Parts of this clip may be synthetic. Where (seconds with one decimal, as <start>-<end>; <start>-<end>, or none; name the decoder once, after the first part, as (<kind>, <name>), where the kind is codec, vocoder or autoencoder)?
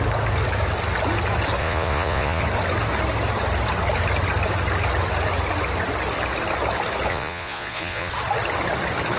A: 1.6-2.4 (vocoder, Vocos); 7.1-8.1